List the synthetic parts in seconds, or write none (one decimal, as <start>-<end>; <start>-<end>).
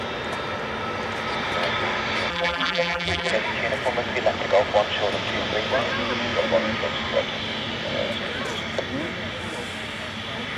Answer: 2.3-3.3